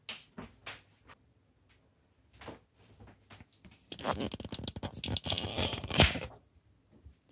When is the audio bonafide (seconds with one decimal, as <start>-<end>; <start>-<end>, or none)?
0.0-5.5; 6.3-7.3